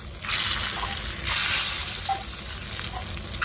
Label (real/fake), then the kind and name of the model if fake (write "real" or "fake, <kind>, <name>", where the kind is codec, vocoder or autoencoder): real